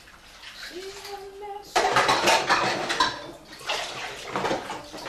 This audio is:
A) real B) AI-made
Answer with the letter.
A